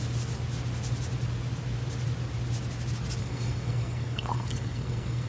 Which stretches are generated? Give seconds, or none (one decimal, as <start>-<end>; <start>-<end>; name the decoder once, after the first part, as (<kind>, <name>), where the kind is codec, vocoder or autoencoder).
3.2-5.3 (codec, SNAC)